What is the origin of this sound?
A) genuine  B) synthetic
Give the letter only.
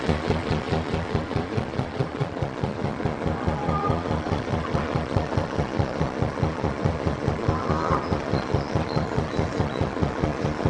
B